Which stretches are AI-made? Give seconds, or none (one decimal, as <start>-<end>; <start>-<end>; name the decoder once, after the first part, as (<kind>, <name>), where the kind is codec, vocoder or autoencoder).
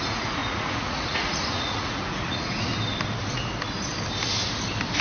0.0-2.7 (vocoder, Vocos)